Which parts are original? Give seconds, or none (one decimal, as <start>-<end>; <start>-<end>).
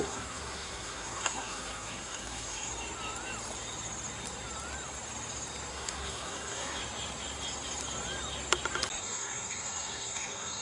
2.7-5.7; 6.8-9.0